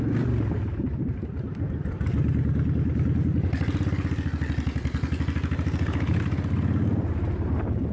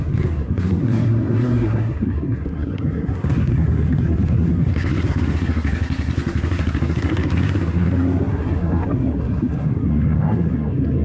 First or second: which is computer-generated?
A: second